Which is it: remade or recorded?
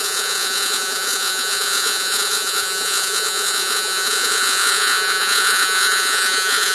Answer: remade